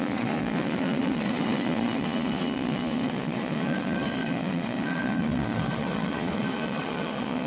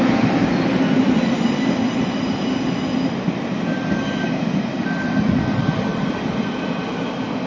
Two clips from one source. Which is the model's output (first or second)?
first